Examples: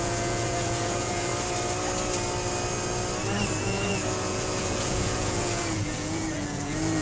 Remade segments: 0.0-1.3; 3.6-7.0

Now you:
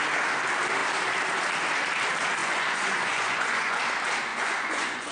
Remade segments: 2.4-3.8; 4.3-5.1

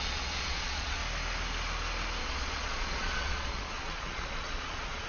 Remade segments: 0.0-1.0; 2.2-5.1

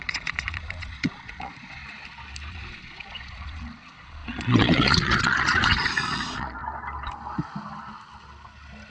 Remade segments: 0.0-1.8; 2.5-6.6

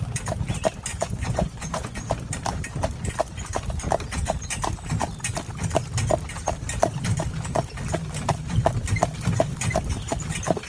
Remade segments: 0.9-2.0

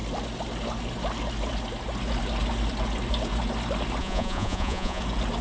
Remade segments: 4.0-5.0